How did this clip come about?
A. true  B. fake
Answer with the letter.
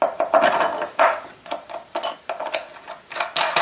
A